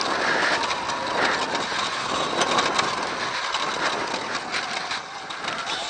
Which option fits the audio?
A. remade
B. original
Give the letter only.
B